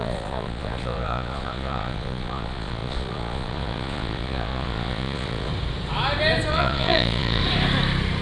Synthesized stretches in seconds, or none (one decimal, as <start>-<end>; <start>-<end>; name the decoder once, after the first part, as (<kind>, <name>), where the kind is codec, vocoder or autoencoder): 0.0-5.5 (vocoder, Vocos); 6.5-7.4